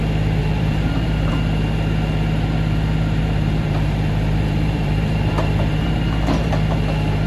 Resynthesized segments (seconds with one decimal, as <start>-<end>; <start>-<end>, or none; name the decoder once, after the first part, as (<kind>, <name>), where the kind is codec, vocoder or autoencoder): 0.4-1.3 (vocoder, BigVGAN v2); 3.2-6.5